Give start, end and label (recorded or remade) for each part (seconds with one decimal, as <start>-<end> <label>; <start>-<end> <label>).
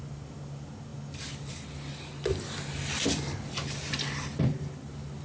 0.0-5.2 recorded